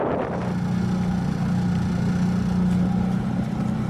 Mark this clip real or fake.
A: real